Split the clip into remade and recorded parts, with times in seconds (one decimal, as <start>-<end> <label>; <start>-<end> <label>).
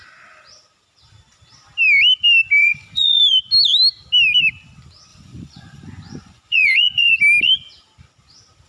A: 0.0-2.6 recorded; 2.6-3.2 remade; 3.2-5.1 recorded; 5.1-7.2 remade; 7.2-8.7 recorded